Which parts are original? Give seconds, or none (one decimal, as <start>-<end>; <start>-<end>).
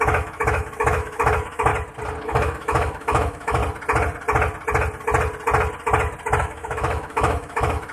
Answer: 1.7-2.2; 3.6-6.4